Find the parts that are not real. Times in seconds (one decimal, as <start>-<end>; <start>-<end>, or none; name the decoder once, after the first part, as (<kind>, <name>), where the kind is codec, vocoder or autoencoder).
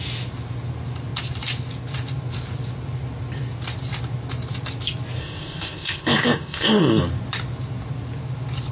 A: 5.2-7.0 (codec, ZipCodec)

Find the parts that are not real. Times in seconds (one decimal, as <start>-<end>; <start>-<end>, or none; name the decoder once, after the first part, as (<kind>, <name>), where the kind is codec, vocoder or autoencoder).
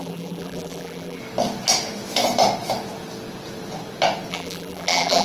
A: 0.0-1.2 (vocoder, BigVGAN v2); 4.3-5.2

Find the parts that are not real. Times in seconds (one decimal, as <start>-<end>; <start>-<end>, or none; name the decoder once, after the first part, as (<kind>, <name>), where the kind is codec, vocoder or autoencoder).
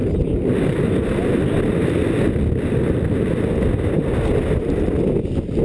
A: none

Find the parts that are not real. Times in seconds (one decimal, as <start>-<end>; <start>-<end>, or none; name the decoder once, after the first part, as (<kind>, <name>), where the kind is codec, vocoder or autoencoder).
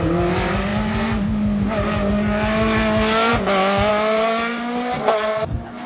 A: none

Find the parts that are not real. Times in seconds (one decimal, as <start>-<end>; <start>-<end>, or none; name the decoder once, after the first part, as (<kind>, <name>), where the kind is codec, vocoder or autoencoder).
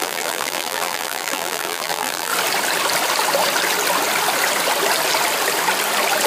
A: 0.0-2.3 (vocoder, BigVGAN v2)